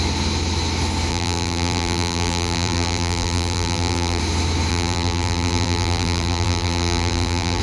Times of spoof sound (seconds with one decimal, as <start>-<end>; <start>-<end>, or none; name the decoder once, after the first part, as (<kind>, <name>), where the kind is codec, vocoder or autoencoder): 1.1-4.2 (vocoder, BigVGAN v2); 4.7-7.6